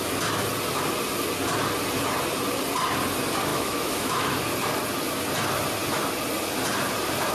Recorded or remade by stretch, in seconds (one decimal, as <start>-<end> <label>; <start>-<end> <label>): 0.0-3.5 recorded; 3.5-4.4 remade; 4.4-7.3 recorded